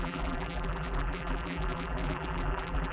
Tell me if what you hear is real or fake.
fake